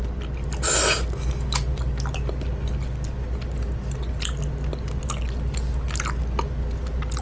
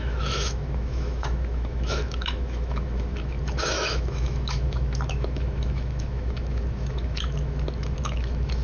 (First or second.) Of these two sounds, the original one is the first